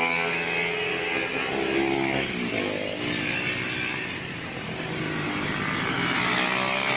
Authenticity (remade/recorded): recorded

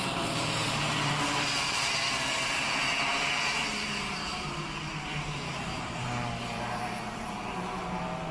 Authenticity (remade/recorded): remade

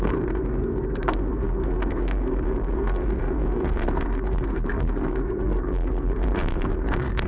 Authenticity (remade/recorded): remade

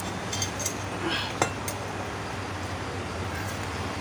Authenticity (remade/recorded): recorded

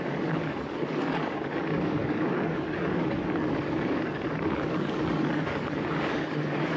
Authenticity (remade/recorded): remade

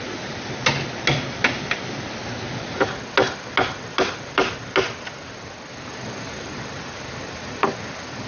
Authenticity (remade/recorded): recorded